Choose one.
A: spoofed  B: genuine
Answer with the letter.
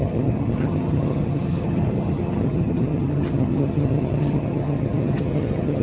A